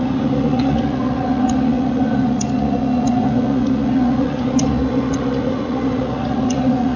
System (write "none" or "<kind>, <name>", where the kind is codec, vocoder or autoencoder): vocoder, Vocos